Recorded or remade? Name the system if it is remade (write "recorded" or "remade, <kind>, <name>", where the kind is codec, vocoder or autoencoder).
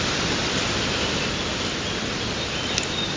remade, vocoder, BigVGAN v2